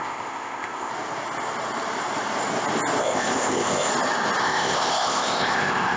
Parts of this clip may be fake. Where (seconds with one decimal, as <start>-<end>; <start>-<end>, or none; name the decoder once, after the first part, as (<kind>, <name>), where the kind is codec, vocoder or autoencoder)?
0.0-0.9 (codec, ZipCodec); 3.0-3.9; 4.4-6.0